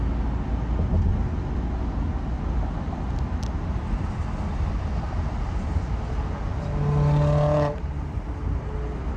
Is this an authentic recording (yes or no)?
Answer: yes